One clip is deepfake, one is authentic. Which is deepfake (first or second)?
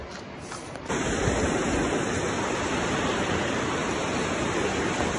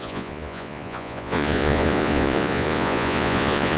second